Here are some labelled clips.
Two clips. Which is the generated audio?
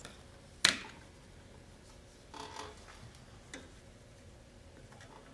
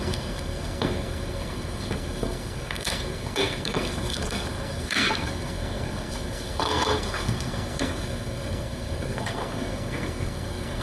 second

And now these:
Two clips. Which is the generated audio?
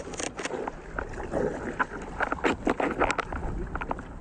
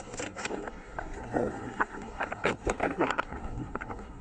second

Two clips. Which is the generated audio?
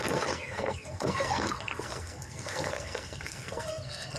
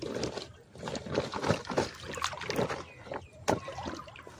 first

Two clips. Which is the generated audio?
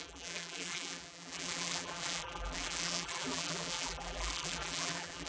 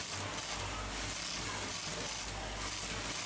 first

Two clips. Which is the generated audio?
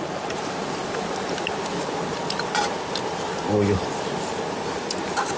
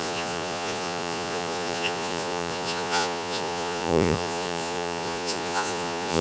second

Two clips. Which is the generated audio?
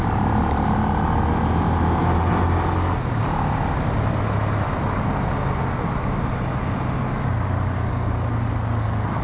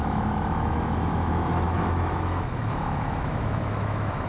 second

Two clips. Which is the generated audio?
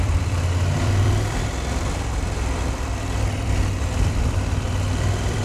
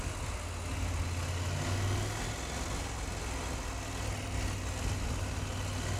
first